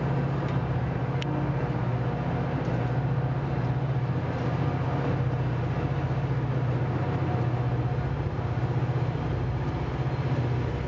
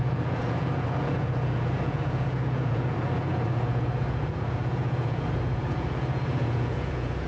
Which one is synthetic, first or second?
second